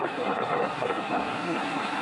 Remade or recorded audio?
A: remade